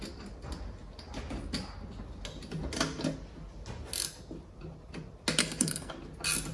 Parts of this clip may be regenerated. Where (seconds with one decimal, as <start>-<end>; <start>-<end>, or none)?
5.4-5.9